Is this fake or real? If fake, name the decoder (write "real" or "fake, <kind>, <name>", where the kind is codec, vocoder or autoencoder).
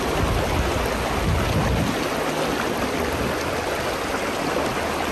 real